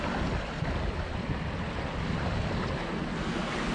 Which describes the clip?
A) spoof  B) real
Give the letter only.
B